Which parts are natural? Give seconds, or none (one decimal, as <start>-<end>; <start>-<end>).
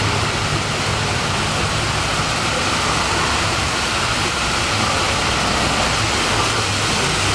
0.0-0.9; 1.4-2.1; 5.3-7.3